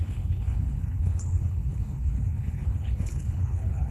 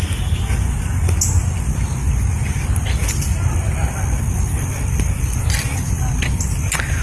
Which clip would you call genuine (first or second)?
second